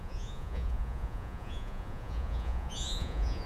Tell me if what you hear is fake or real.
fake